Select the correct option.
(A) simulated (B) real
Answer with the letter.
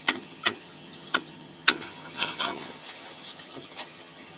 A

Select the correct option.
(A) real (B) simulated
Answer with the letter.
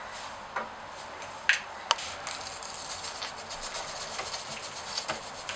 A